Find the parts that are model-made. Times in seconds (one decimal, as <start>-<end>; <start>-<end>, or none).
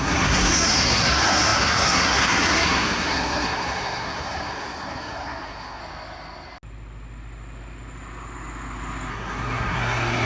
0.0-5.8; 9.1-10.3